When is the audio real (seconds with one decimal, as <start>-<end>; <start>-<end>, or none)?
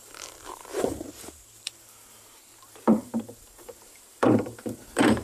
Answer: none